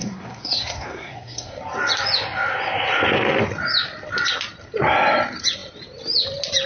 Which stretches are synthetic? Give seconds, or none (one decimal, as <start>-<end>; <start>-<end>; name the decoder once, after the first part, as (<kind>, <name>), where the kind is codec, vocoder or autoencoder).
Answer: 0.0-1.6 (codec, SNAC)